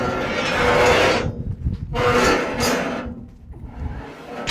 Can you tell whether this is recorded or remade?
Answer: recorded